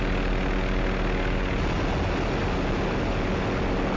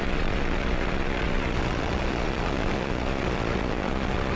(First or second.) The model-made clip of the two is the second